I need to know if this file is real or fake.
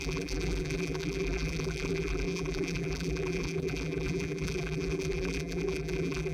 fake